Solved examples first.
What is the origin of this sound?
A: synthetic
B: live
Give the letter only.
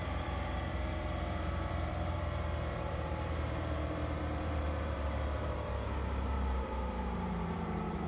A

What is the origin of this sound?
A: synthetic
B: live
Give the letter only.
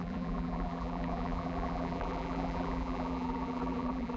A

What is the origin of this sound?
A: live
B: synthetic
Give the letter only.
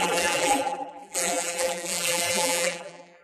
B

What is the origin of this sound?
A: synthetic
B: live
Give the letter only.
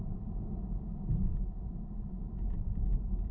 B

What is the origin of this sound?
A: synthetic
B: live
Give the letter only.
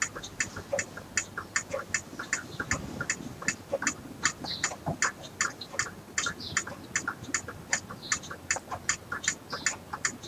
B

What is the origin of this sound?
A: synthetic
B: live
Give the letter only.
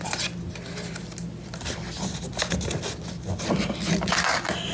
B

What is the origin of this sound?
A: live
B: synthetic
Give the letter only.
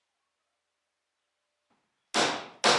A